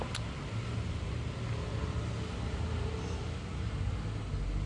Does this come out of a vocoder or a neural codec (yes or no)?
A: no